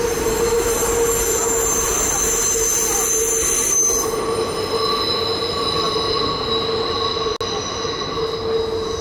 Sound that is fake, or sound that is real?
real